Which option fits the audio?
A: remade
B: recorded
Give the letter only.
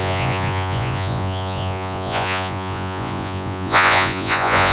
A